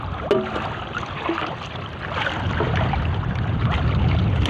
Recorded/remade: recorded